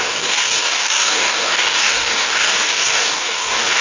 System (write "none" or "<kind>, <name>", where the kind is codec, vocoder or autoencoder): codec, DAC